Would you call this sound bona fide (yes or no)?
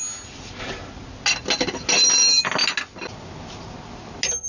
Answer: yes